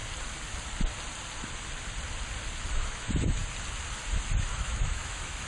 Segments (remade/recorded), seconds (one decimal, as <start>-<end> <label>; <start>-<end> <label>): 0.0-2.7 recorded; 2.7-3.4 remade; 3.4-4.5 recorded; 4.5-5.5 remade